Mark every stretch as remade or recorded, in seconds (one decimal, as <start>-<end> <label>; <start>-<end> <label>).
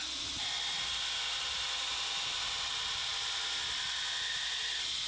0.0-5.1 recorded